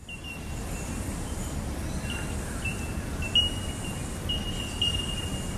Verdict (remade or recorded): recorded